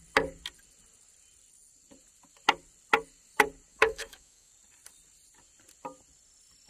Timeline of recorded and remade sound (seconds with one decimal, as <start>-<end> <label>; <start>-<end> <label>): 0.0-3.7 recorded; 3.7-4.5 remade; 4.5-6.7 recorded

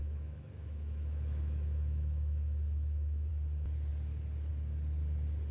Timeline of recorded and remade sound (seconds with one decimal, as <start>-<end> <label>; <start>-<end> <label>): 0.0-3.3 remade; 3.3-5.5 recorded